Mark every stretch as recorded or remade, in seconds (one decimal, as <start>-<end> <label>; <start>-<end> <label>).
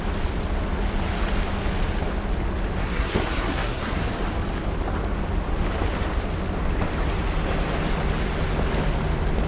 0.0-2.8 recorded; 2.8-4.0 remade; 4.0-9.5 recorded